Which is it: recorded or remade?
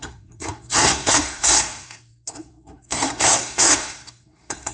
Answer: remade